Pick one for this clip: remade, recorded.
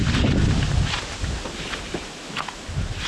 recorded